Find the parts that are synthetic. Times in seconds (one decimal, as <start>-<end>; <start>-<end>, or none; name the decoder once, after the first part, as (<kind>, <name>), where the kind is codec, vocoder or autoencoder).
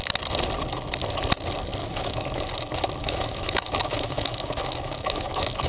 1.8-2.5 (autoencoder, DAC-VAE); 3.0-5.7